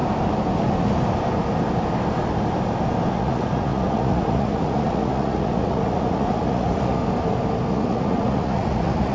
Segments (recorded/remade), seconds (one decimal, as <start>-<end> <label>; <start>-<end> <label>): 0.0-3.1 recorded; 3.1-7.0 remade; 7.0-7.7 recorded; 7.7-9.1 remade

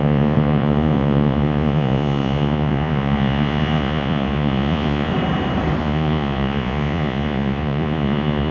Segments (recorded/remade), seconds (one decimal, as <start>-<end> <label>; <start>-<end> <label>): 0.0-5.1 remade; 5.1-5.8 recorded; 5.8-8.5 remade